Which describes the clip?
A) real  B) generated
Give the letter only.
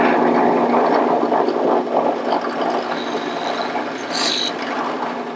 A